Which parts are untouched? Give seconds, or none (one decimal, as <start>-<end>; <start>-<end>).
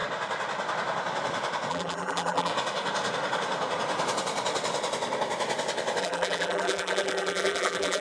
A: 0.0-1.7; 2.5-6.0